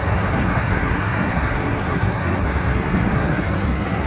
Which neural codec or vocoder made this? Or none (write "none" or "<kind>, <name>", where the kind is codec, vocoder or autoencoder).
codec, SNAC